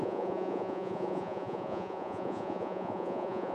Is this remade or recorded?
remade